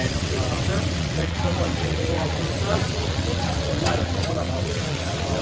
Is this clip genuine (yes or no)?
no